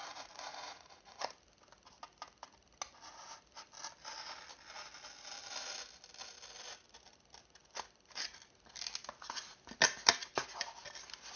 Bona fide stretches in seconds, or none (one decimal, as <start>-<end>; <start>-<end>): 1.3-11.4

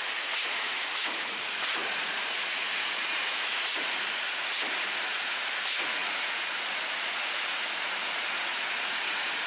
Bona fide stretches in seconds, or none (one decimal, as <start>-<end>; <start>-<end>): none

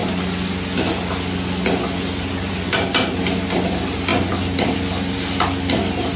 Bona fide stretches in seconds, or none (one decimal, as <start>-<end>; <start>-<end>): 0.0-6.2

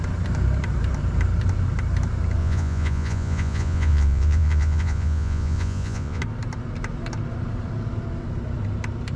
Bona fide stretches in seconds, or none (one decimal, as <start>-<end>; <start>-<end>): 0.0-2.4; 6.2-9.2

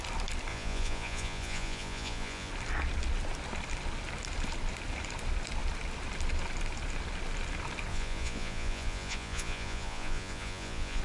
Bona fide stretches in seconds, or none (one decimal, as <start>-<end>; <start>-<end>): 0.0-0.5; 2.5-7.9

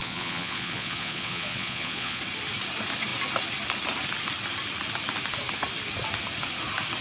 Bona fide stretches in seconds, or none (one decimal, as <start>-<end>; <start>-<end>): 2.2-7.0

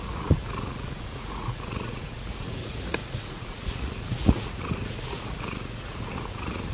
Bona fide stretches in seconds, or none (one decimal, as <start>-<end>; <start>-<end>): none